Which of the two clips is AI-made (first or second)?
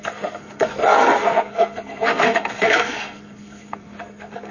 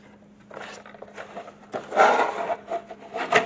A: first